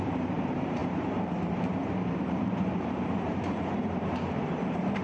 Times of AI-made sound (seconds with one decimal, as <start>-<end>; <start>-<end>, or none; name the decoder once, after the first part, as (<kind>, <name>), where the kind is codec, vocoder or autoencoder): 0.0-5.0 (vocoder, BigVGAN v2)

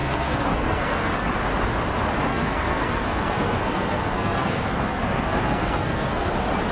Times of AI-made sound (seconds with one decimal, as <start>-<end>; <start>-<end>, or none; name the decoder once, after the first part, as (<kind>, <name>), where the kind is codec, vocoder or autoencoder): 0.0-1.3 (codec, SNAC); 2.3-6.3

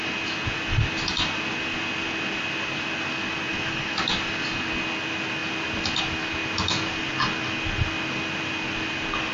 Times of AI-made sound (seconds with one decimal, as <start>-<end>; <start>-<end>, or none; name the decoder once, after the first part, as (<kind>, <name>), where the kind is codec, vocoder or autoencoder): 3.5-4.0 (autoencoder, DAC-VAE)

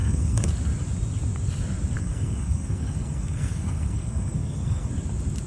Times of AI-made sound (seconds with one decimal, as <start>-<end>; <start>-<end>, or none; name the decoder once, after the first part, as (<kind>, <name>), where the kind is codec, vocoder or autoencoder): 0.0-0.5 (codec, SNAC); 2.0-4.9